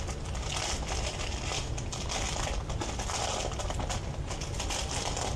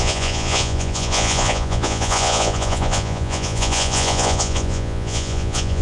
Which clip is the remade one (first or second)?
second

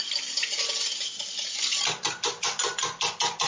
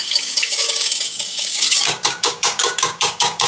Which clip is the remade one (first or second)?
second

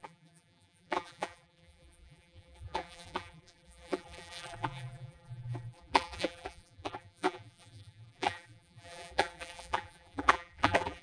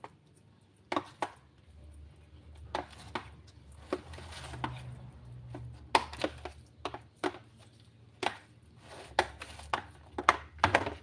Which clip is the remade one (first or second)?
first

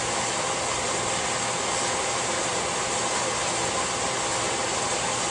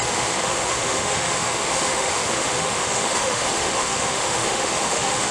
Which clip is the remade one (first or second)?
second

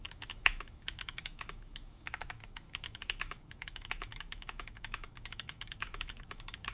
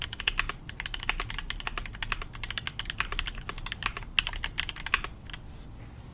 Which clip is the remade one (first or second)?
first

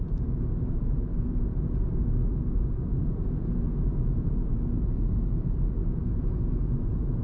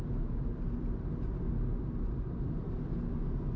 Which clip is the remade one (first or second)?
first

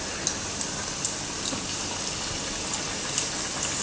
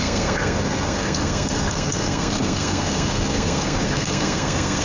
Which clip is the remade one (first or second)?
second